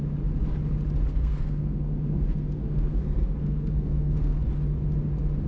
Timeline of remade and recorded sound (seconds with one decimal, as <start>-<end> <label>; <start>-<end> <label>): 0.0-1.1 recorded; 1.1-4.4 remade; 4.4-5.5 recorded